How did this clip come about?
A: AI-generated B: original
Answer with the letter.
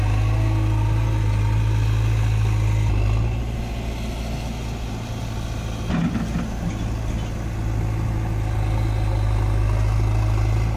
B